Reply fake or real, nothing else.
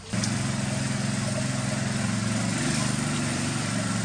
real